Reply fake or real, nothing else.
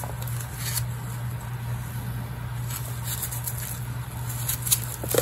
real